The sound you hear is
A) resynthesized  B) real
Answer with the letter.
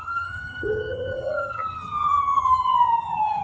A